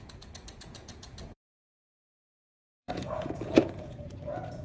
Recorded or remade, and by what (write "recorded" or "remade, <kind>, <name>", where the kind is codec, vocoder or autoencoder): remade, vocoder, Vocos